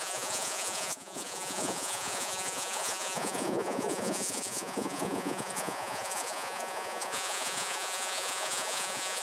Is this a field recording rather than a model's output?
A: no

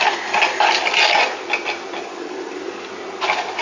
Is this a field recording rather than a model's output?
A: yes